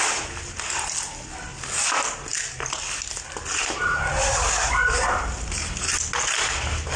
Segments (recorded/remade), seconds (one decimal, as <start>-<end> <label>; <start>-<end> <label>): 0.0-7.0 recorded